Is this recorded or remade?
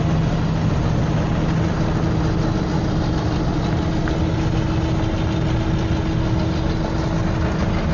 recorded